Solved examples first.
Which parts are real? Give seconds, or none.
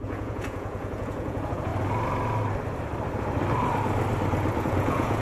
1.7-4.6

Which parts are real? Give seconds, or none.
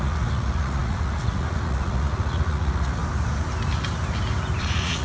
3.0-4.6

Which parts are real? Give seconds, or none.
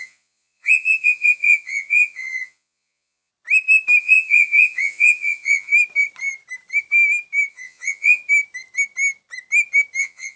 3.3-4.0; 5.7-7.5; 8.2-10.0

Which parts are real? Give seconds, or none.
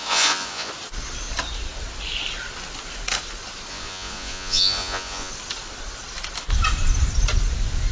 0.7-3.7; 5.3-7.9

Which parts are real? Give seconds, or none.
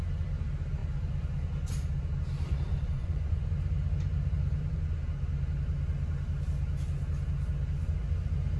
0.0-2.7; 3.5-8.6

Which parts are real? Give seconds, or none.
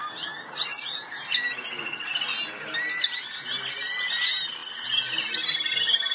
0.0-6.1